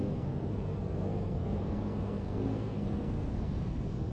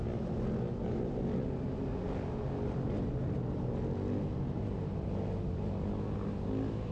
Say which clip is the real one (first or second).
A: second